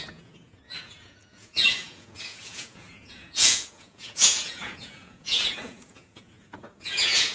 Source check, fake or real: fake